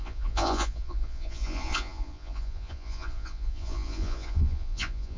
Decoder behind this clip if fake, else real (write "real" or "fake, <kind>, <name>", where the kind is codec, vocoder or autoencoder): fake, vocoder, Vocos